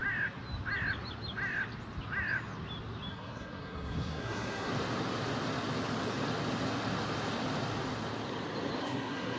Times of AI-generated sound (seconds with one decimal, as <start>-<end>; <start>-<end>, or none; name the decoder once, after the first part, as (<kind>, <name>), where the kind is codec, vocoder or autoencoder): 3.1-4.7 (codec, SNAC); 8.8-9.4